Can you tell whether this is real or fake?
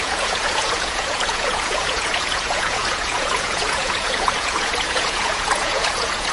fake